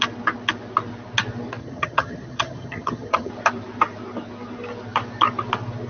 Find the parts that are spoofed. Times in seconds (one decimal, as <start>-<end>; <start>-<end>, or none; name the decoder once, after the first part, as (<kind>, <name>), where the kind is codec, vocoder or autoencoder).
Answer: 1.6-3.3 (vocoder, HiFi-GAN)